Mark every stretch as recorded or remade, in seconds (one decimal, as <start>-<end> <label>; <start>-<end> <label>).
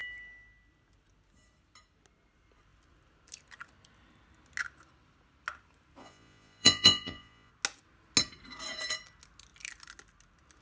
0.0-6.0 recorded; 6.0-7.5 remade; 7.5-10.6 recorded